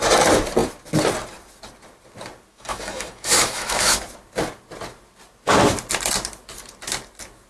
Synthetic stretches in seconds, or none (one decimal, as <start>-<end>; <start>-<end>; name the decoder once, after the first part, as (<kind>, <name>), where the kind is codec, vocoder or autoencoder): 2.5-4.0 (autoencoder, DAC-VAE)